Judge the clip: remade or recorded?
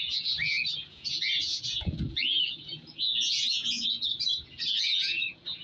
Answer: remade